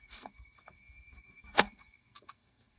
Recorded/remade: remade